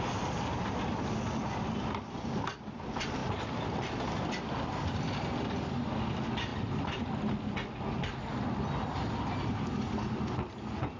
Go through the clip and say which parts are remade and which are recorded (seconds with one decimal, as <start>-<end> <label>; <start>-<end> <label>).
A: 0.0-11.0 recorded